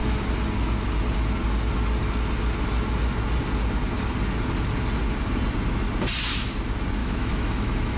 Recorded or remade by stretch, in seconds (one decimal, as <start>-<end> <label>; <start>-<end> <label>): 0.0-7.0 recorded; 7.0-8.0 remade